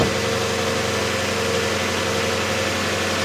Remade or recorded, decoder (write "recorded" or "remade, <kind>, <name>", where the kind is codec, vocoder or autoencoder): recorded